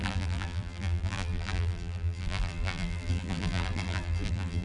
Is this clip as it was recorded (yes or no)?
no